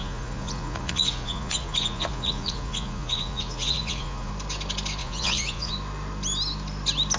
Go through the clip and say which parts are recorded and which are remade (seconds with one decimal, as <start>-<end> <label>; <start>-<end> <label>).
0.0-4.3 remade; 4.3-5.0 recorded; 5.0-5.7 remade; 5.7-7.2 recorded